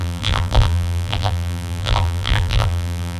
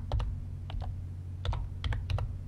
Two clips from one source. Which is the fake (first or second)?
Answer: first